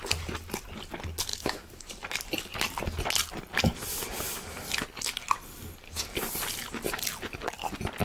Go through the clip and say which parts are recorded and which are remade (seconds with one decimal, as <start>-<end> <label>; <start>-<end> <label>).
0.0-1.3 recorded; 1.3-1.9 remade; 1.9-8.0 recorded